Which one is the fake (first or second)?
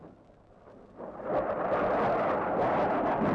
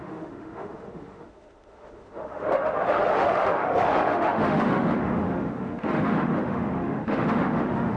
second